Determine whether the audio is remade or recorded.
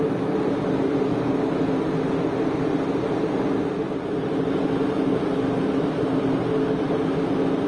recorded